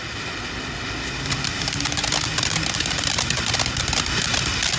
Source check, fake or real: real